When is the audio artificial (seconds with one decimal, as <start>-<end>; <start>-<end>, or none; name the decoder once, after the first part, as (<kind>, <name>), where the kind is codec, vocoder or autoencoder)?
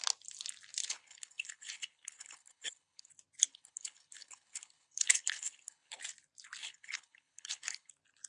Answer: 0.8-3.1 (codec, HILCodec); 3.5-6.0; 6.6-7.9